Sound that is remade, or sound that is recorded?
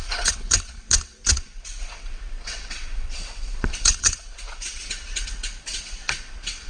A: remade